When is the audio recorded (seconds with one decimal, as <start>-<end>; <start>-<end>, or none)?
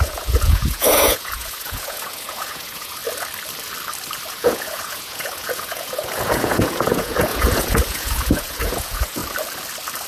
3.0-4.3; 9.2-10.1